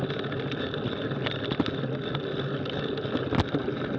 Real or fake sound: real